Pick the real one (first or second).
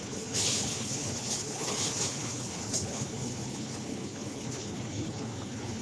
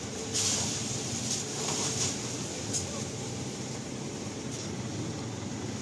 second